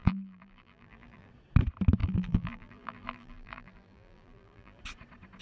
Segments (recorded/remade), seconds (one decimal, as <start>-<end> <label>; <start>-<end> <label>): 0.0-1.3 remade; 1.3-2.0 recorded; 2.0-4.8 remade; 4.8-5.4 recorded